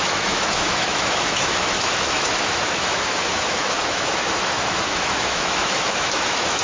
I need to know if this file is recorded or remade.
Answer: remade